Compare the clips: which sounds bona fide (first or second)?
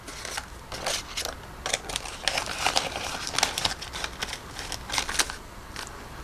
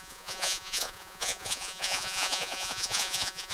first